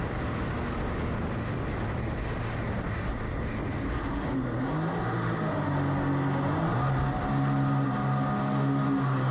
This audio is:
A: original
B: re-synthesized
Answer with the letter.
A